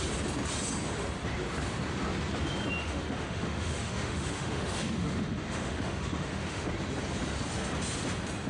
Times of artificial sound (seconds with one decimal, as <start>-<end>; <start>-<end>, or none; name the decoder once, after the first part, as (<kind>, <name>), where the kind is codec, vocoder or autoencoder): 2.8-6.7 (autoencoder, DAC-VAE)